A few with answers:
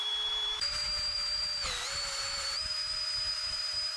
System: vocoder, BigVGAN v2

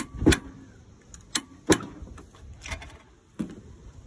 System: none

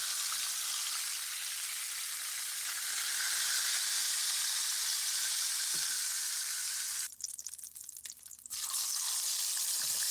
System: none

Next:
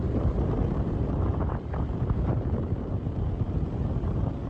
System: vocoder, BigVGAN v2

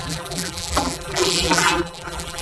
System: vocoder, BigVGAN v2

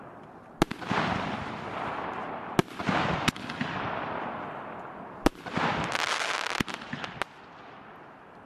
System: none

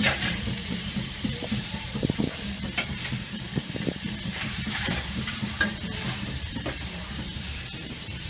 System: vocoder, BigVGAN v2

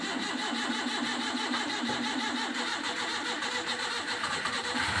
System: vocoder, BigVGAN v2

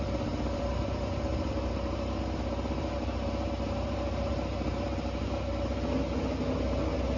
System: none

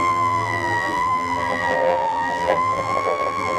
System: vocoder, BigVGAN v2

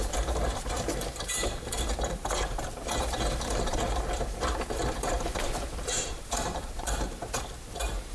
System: vocoder, BigVGAN v2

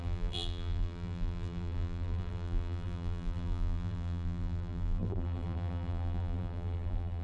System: vocoder, BigVGAN v2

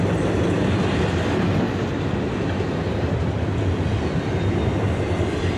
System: none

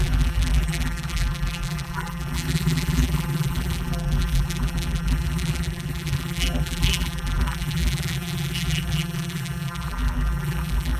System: vocoder, BigVGAN v2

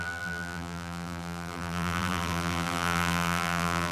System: vocoder, BigVGAN v2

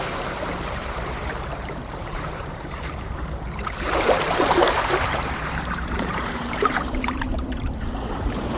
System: vocoder, BigVGAN v2